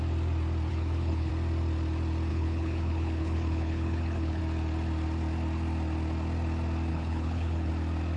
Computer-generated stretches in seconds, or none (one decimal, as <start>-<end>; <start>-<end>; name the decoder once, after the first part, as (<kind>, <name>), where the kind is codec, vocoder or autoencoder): 0.7-1.3 (codec, HILCodec); 2.3-4.4; 6.9-7.7